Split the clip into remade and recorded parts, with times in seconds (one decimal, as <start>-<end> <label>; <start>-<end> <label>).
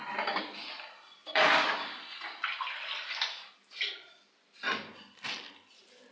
0.0-1.2 recorded; 1.2-4.9 remade; 4.9-6.1 recorded